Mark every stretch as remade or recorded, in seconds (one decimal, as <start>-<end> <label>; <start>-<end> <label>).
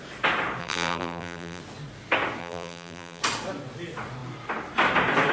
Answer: 0.0-0.6 recorded; 0.6-1.6 remade; 1.6-2.4 recorded; 2.4-3.2 remade; 3.2-5.3 recorded